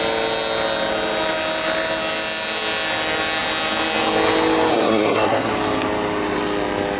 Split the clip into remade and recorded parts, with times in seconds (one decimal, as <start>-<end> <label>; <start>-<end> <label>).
0.0-4.7 recorded; 4.7-5.5 remade; 5.5-7.0 recorded